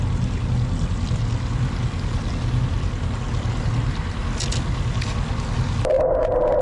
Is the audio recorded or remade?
recorded